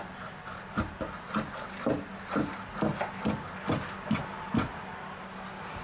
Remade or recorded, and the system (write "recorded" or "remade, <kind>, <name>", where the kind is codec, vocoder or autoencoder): recorded